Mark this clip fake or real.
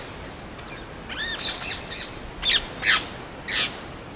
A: real